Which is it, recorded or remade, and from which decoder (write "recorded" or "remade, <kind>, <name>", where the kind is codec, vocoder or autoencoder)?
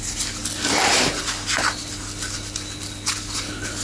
recorded